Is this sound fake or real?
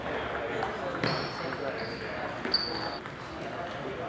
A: real